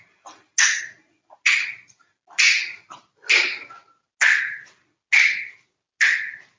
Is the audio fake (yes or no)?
no